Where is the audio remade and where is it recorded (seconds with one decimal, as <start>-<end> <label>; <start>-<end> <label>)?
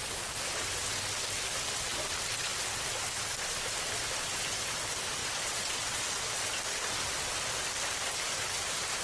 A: 0.0-5.2 recorded; 5.2-6.0 remade; 6.0-9.0 recorded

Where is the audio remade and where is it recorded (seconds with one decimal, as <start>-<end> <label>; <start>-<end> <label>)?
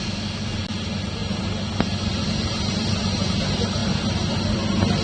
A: 0.0-5.0 recorded